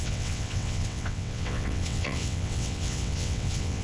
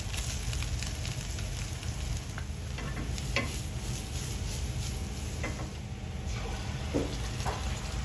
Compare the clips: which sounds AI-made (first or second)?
first